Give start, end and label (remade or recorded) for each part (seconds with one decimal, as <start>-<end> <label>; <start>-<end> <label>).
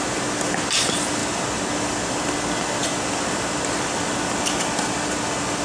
0.0-5.6 recorded